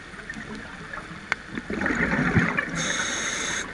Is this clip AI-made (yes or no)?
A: no